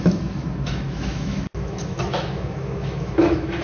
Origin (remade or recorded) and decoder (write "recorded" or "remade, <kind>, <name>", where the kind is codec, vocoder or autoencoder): remade, autoencoder, DAC-VAE